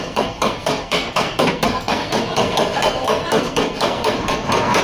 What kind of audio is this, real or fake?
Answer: fake